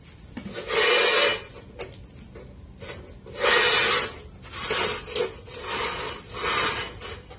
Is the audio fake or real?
real